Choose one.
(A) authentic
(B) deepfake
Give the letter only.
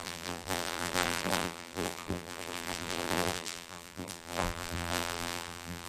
B